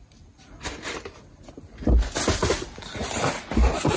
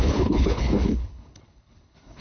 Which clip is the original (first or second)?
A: first